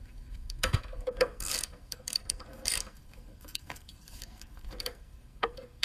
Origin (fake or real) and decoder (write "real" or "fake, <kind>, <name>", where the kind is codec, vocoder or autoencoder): fake, codec, SNAC